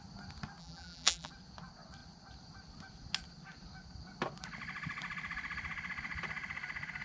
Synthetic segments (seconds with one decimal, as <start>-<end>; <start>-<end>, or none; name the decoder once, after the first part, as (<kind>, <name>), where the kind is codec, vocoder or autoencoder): 0.6-1.3 (vocoder, BigVGAN v2)